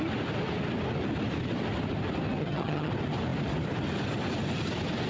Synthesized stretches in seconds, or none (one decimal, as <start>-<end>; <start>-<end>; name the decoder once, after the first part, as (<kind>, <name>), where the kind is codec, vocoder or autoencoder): 2.4-2.9 (vocoder, HiFi-GAN)